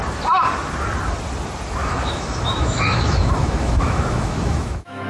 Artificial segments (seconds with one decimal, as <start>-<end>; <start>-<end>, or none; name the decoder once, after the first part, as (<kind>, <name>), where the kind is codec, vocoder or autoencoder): 1.8-5.1 (autoencoder, DAC-VAE)